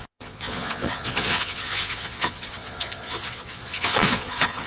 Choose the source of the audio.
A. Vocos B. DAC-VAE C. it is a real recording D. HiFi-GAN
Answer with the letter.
A